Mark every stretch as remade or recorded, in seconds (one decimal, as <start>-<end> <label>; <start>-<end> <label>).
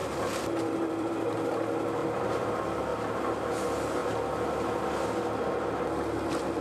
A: 0.0-1.1 remade; 1.1-2.0 recorded; 2.0-2.5 remade; 2.5-6.6 recorded